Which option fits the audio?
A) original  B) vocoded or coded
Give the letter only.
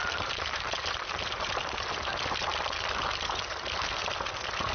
A